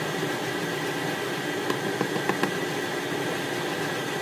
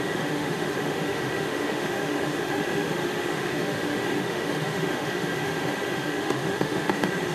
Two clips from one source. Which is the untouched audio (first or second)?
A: first